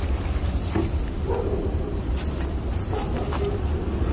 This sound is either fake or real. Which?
real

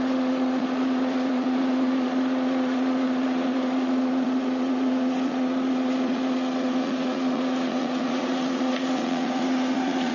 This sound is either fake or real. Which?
fake